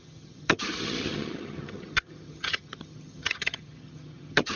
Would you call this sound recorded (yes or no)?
no